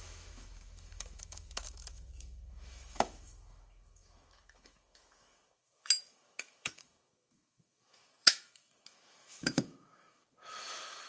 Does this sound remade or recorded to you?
remade